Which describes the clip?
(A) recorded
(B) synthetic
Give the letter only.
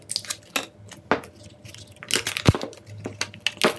A